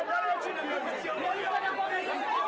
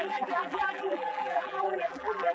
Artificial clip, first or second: second